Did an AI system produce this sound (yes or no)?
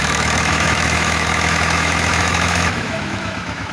yes